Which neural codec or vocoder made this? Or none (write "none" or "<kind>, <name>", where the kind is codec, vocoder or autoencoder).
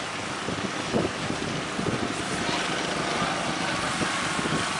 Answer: none